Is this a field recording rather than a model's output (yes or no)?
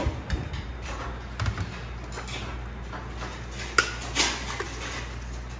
yes